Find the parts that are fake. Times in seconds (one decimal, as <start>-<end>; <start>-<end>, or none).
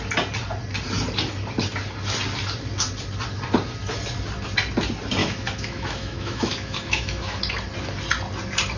5.2-7.4